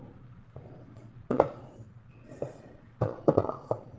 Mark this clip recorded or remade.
remade